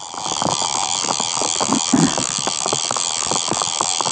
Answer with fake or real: real